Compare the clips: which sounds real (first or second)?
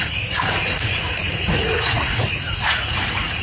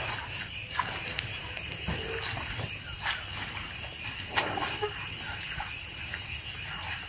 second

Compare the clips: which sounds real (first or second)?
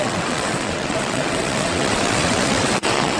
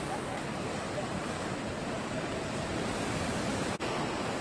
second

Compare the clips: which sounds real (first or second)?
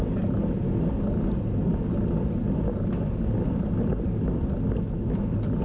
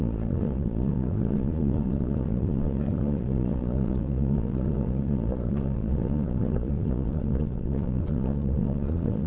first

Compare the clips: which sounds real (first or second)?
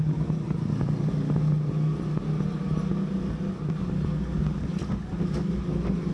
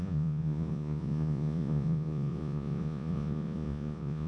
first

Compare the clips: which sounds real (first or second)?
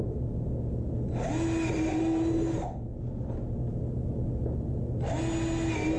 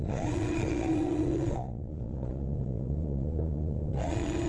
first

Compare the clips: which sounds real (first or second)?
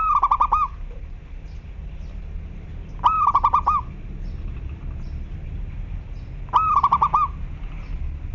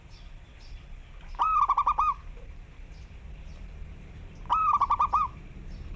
first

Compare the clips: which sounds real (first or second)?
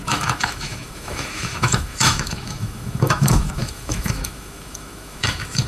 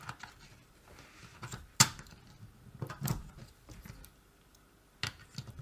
second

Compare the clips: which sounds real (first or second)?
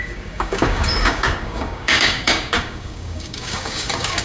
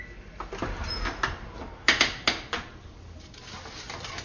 second